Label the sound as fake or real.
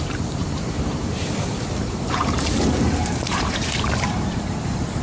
fake